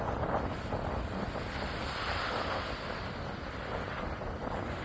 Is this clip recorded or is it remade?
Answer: recorded